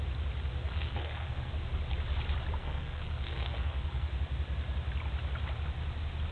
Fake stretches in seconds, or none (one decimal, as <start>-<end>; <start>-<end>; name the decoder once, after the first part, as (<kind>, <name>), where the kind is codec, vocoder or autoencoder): 0.6-1.5 (codec, SNAC); 2.6-4.1